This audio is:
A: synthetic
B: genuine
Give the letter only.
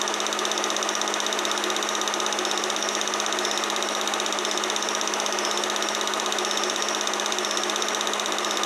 B